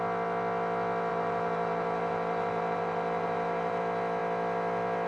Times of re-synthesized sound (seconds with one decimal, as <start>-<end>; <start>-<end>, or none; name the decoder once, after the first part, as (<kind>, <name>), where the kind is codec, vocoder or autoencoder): 1.1-3.8 (vocoder, BigVGAN v2)